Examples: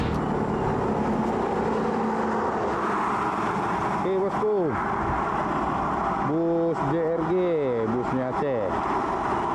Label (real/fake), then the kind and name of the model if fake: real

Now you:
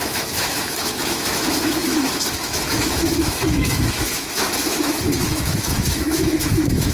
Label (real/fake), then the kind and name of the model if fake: fake, autoencoder, DAC-VAE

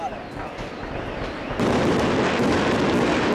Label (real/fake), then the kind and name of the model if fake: real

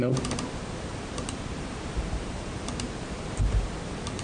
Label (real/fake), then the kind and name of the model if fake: fake, vocoder, BigVGAN v2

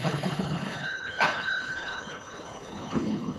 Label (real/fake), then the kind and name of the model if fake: fake, codec, HILCodec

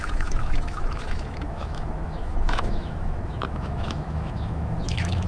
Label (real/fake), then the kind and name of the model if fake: fake, autoencoder, DAC-VAE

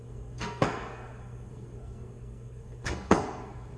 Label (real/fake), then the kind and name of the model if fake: fake, codec, SNAC